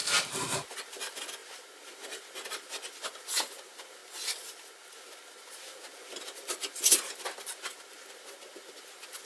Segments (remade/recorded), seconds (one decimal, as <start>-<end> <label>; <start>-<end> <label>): 0.0-9.2 recorded